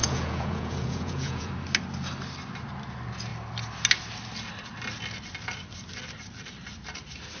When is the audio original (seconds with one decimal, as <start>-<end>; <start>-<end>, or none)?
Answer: 1.5-7.4